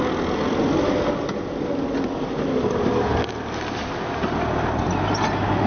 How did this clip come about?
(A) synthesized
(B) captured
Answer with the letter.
B